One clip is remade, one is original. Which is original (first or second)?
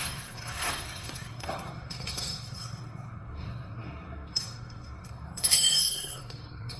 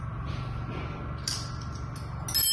second